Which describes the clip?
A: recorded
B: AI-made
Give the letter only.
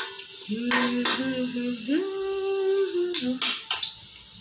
A